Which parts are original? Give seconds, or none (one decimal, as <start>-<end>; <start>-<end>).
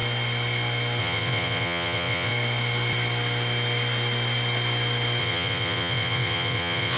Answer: 0.0-1.0; 2.3-5.2